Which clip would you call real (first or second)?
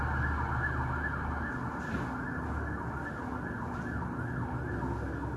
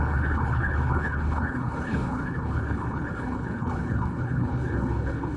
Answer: first